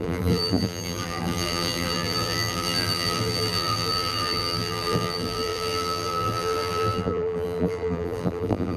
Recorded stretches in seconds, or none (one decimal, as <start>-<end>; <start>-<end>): none